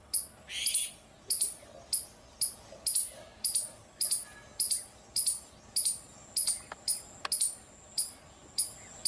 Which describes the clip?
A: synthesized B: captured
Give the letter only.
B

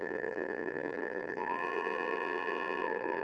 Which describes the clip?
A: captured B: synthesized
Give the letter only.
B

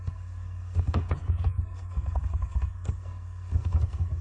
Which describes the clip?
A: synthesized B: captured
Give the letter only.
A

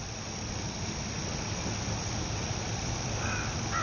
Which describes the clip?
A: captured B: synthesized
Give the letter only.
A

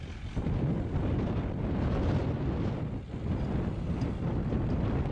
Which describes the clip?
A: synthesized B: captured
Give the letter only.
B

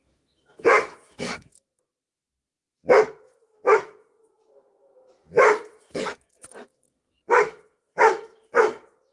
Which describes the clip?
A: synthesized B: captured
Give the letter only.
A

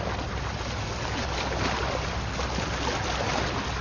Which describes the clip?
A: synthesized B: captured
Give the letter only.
B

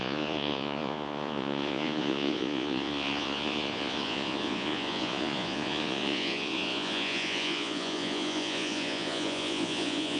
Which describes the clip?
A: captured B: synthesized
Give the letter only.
B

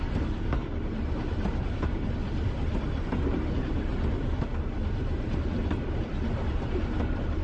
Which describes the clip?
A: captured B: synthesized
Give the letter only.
A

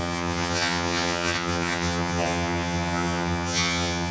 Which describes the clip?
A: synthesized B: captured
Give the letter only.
A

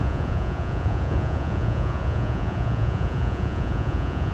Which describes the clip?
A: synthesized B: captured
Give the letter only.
A